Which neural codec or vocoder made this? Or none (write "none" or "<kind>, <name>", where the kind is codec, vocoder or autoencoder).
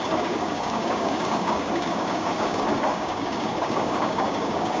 codec, DAC